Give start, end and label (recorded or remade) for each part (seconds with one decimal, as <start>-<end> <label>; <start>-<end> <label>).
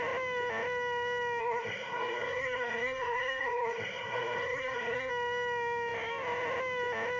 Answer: 0.0-1.4 recorded; 1.4-5.1 remade; 5.1-7.2 recorded